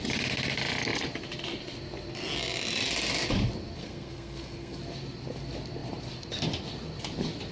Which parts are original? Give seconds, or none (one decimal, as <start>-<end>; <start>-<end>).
0.0-3.8; 4.8-7.5